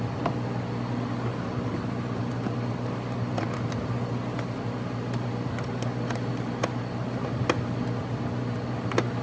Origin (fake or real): real